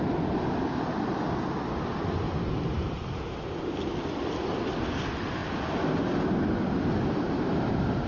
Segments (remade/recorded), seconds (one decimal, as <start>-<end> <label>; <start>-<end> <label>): 0.0-8.1 recorded